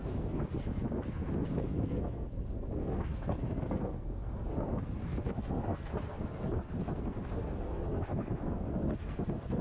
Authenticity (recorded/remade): remade